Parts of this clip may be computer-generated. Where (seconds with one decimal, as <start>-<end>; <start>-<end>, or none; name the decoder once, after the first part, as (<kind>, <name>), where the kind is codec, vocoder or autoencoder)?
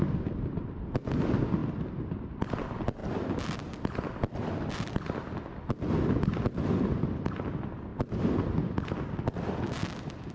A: 1.6-2.5 (vocoder, BigVGAN v2)